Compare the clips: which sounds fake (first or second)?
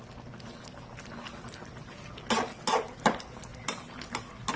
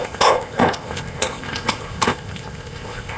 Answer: second